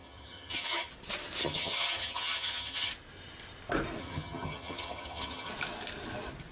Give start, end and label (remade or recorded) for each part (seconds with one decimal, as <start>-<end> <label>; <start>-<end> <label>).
0.0-0.9 remade; 0.9-1.4 recorded; 1.4-2.9 remade; 2.9-4.0 recorded; 4.0-5.5 remade; 5.5-6.5 recorded